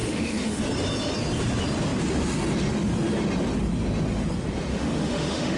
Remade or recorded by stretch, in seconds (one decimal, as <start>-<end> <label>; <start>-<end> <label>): 0.0-0.6 remade; 0.6-4.7 recorded; 4.7-5.6 remade